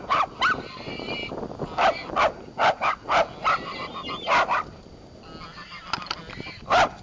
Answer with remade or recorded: recorded